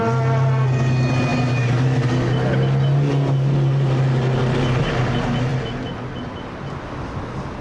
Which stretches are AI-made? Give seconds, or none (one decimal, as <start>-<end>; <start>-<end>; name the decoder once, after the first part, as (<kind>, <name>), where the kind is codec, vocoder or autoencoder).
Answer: none